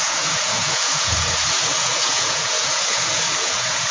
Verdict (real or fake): fake